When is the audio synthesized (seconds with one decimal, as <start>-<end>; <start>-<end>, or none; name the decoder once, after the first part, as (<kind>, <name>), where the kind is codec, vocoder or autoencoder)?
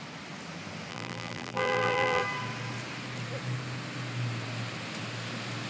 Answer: 0.9-2.2 (vocoder, BigVGAN v2)